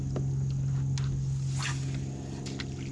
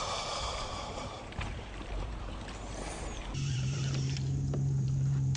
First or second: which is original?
first